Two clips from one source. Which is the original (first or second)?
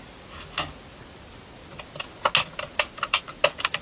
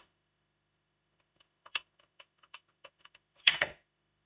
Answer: first